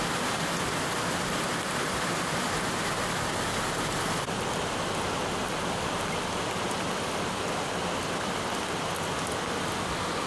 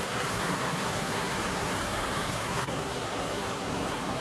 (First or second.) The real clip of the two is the first